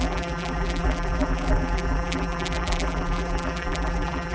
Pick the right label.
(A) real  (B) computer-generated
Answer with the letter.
B